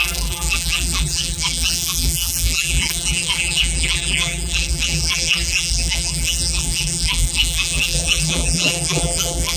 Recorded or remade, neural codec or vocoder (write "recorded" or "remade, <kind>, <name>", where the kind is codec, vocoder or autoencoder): remade, vocoder, BigVGAN v2